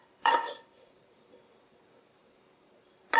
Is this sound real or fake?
fake